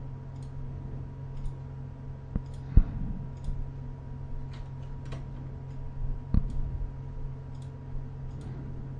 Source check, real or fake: real